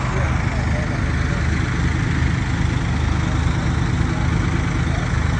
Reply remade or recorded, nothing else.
recorded